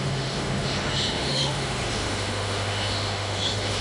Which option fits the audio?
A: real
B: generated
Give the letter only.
B